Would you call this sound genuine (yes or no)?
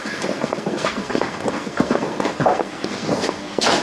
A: no